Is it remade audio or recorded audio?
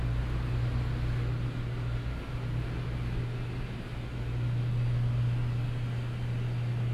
recorded